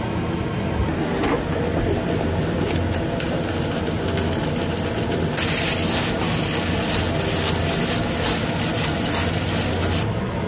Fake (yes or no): no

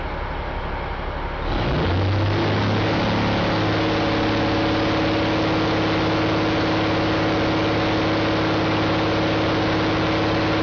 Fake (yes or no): no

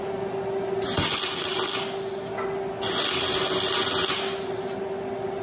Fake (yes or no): no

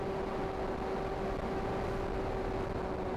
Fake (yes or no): no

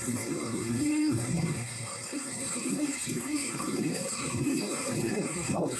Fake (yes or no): yes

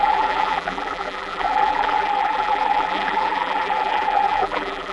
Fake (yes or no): yes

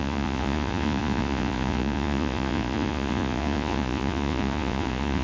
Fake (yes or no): yes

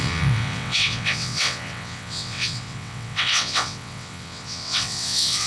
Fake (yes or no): yes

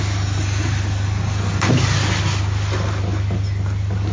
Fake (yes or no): no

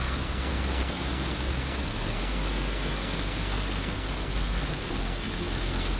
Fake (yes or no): yes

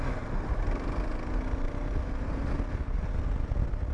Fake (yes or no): no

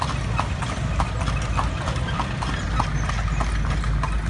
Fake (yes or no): no